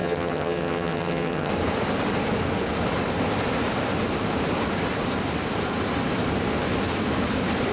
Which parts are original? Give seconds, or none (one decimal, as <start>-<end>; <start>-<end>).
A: 1.5-7.7